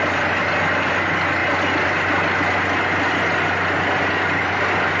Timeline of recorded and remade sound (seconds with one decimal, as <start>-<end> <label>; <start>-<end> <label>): 0.0-5.0 recorded